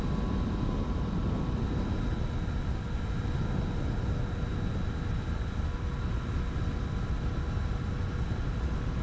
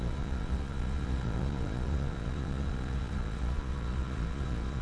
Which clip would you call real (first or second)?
first